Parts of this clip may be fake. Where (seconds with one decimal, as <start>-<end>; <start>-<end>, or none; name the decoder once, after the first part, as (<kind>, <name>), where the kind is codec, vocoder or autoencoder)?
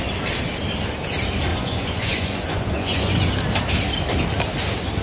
1.5-3.3 (vocoder, Vocos)